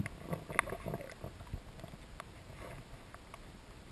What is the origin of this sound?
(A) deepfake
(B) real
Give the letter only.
B